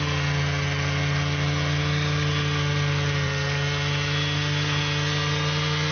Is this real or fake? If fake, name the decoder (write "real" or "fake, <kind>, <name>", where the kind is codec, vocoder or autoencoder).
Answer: real